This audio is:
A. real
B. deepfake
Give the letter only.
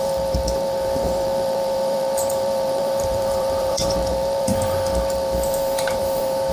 B